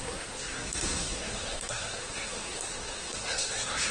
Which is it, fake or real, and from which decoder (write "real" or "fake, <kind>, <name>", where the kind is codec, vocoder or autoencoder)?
fake, codec, SNAC